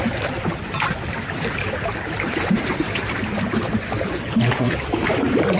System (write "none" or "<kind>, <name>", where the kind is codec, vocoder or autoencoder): vocoder, BigVGAN v2